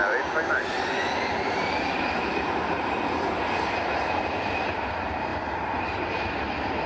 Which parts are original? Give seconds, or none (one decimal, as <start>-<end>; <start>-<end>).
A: 0.0-1.3